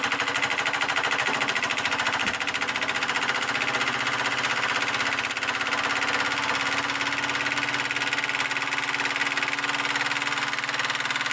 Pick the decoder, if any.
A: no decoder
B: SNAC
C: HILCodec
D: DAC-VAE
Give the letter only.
A